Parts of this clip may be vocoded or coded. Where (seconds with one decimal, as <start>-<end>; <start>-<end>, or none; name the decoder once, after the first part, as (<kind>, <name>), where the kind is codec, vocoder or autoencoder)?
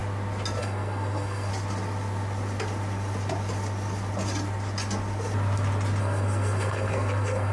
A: 0.6-1.5 (codec, SNAC); 6.0-7.5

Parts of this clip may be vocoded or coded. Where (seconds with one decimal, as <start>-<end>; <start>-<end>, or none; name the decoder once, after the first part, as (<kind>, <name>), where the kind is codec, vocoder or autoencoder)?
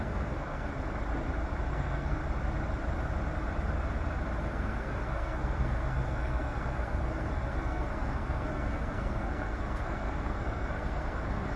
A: 0.0-0.7 (codec, SNAC); 1.7-2.2; 4.4-11.6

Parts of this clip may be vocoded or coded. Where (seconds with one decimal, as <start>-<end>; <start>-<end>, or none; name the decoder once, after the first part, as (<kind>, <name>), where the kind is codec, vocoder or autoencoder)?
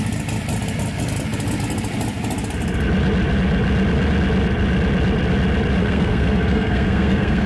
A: 5.8-7.5 (codec, SNAC)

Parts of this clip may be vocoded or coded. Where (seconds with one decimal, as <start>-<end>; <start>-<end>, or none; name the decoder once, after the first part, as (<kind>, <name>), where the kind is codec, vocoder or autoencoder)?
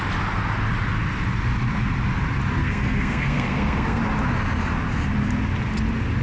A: 2.6-4.0 (codec, SNAC)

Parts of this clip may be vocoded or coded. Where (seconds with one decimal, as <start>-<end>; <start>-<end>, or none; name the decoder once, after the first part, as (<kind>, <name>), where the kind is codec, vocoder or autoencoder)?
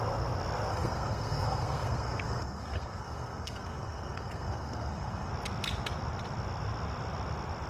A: 0.7-5.3 (codec, SNAC)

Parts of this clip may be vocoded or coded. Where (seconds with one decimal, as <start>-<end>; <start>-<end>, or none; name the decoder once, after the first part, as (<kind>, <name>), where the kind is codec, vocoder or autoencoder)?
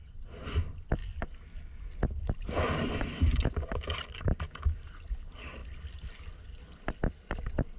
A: none